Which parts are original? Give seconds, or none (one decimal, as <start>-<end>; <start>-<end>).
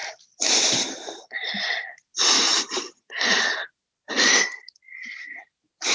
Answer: 0.0-5.9